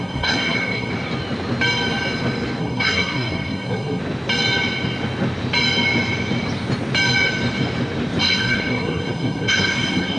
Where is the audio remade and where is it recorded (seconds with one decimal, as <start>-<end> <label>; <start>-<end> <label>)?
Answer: 0.0-0.9 remade; 0.9-2.6 recorded; 2.6-4.0 remade; 4.0-8.2 recorded; 8.2-10.2 remade

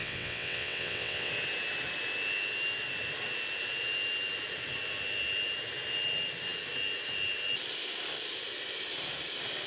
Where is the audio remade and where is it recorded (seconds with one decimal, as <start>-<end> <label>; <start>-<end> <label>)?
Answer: 0.0-1.3 remade; 1.3-9.7 recorded

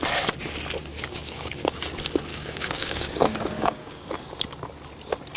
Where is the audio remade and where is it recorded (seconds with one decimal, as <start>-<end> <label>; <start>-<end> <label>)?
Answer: 0.0-0.9 recorded; 0.9-1.9 remade; 1.9-2.3 recorded; 2.3-4.1 remade; 4.1-5.4 recorded